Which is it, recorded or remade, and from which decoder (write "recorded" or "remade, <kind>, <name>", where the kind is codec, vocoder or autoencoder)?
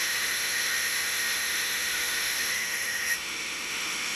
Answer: remade, autoencoder, DAC-VAE